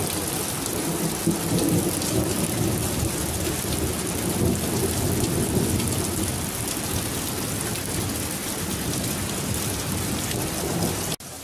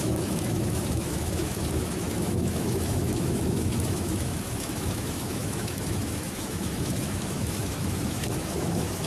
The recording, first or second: first